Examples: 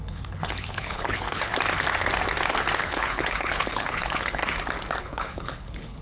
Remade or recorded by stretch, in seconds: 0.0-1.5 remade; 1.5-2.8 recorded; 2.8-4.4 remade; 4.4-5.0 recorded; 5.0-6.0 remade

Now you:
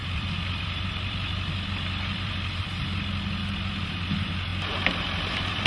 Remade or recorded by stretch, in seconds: 0.0-4.5 remade; 4.5-5.2 recorded; 5.2-5.7 remade